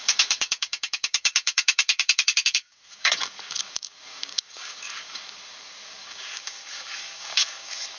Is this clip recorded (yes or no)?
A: no